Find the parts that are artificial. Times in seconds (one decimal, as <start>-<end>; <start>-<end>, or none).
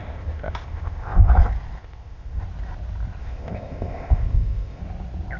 0.0-1.3; 1.8-2.4; 3.2-4.8